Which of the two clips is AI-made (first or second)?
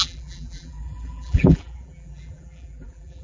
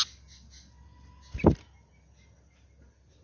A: first